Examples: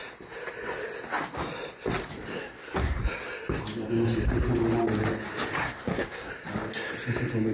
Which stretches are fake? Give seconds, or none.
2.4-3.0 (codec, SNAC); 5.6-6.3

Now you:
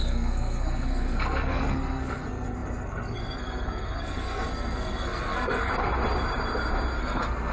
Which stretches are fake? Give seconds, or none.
0.0-5.7 (codec, SNAC); 7.0-7.5